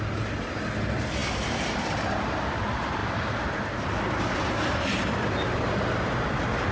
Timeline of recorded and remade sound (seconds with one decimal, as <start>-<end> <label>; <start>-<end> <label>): 0.0-6.7 recorded